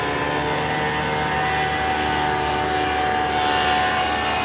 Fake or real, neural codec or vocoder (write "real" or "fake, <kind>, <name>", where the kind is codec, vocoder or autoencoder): real